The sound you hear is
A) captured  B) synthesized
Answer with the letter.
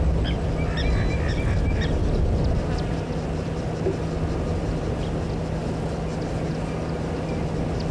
A